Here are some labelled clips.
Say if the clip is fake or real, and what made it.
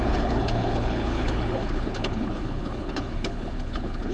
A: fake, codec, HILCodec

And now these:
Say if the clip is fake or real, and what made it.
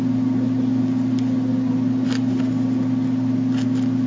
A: real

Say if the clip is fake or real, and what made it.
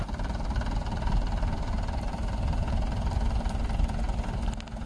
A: real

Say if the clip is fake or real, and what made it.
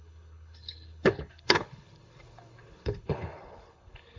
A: fake, codec, HILCodec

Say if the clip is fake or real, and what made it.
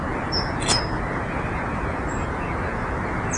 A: real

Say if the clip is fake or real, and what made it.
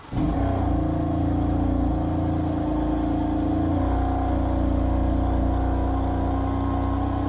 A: real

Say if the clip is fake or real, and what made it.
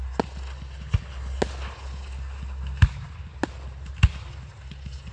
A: real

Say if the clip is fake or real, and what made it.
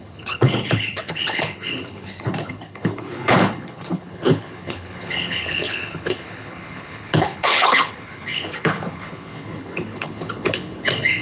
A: fake, codec, HILCodec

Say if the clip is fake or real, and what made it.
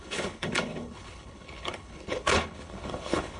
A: fake, codec, HILCodec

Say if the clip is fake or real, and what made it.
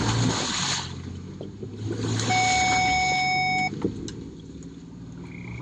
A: real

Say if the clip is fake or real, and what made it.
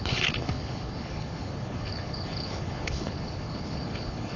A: fake, codec, HILCodec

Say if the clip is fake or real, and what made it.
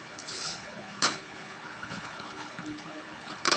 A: fake, codec, HILCodec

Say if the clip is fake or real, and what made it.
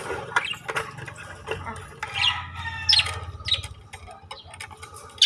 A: real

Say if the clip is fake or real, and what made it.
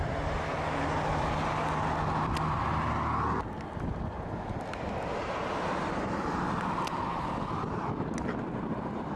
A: real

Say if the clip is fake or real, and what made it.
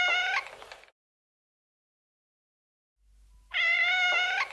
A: real